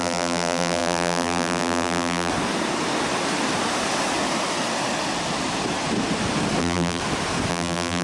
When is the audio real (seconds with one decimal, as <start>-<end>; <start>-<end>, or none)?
2.3-6.6; 7.0-7.5